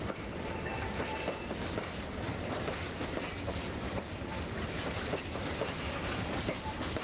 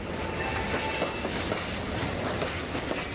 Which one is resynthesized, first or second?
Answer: first